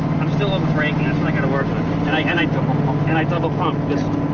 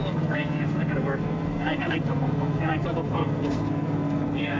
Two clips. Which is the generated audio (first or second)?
second